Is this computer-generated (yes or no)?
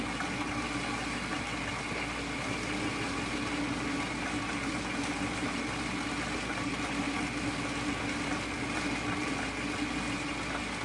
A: no